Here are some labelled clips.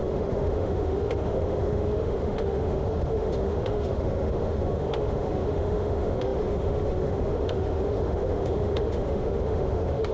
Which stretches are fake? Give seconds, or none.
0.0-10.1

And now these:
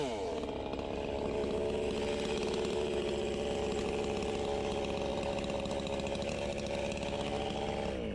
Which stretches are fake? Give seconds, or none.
none

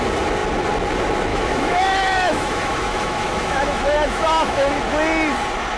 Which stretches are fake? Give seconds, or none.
1.3-4.7

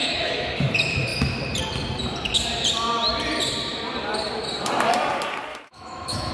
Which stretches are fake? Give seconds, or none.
0.0-0.7; 5.5-6.3

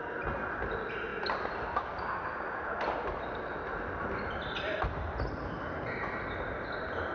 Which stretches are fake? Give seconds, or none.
none